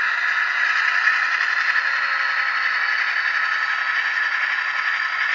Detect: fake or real real